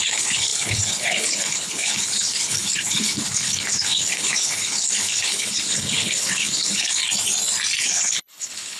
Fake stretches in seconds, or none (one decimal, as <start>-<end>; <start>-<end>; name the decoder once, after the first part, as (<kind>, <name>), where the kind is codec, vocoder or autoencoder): 0.0-7.0 (codec, HILCodec); 7.8-8.8